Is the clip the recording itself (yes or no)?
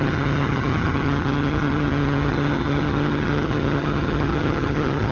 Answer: no